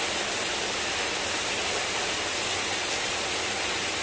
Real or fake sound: real